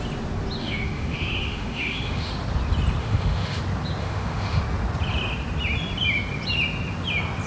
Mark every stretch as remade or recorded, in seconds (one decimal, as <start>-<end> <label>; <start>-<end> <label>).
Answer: 0.0-0.6 recorded; 0.6-2.3 remade; 2.3-3.0 recorded; 3.0-3.6 remade; 3.6-4.0 recorded; 4.0-4.6 remade; 4.6-7.5 recorded